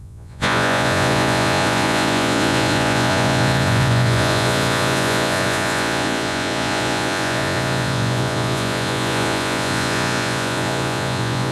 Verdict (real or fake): fake